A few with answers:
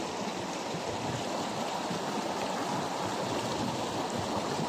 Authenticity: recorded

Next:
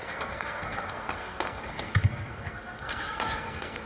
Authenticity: remade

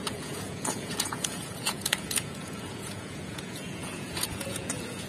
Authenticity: remade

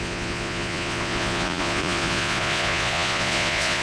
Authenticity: remade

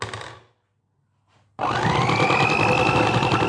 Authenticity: recorded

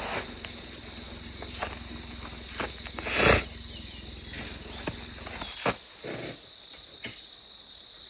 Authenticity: recorded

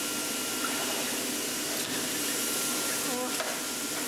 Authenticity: recorded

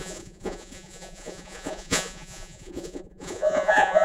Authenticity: remade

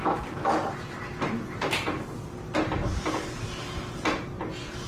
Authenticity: recorded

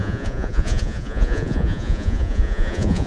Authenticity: remade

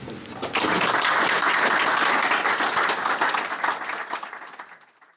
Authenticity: recorded